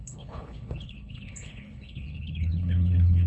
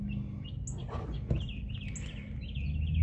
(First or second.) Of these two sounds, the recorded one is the second